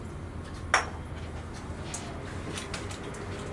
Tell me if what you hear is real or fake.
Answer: real